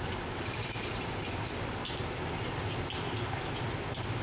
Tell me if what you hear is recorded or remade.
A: recorded